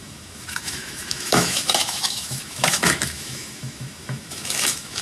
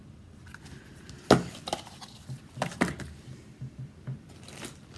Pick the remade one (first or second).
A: first